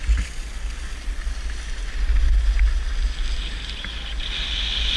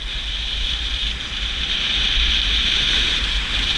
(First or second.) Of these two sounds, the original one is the first